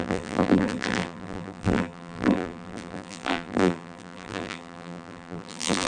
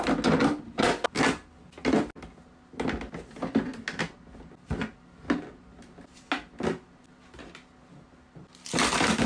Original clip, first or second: second